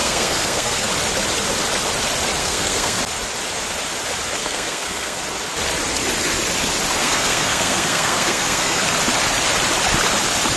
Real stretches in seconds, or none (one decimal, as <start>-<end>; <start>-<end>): 0.9-2.4; 3.0-4.4; 5.2-7.0; 8.8-10.6